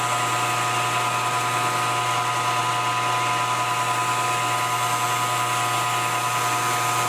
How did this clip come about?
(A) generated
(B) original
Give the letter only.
B